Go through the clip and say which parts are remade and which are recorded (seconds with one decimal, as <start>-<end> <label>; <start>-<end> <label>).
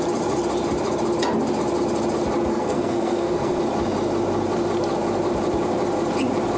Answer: 0.0-2.5 recorded; 2.5-3.6 remade; 3.6-6.6 recorded